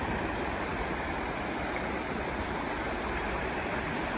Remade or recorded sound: recorded